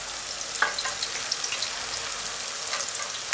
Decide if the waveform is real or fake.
real